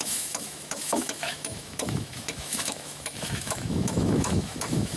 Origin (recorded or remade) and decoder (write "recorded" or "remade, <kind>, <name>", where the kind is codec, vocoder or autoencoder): remade, autoencoder, DAC-VAE